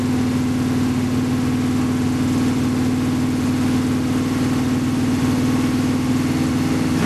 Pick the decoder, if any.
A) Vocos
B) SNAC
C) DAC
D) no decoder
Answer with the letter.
D